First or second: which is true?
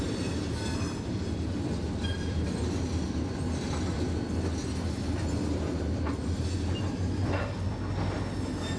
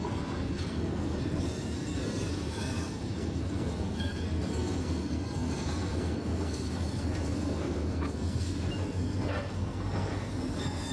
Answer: first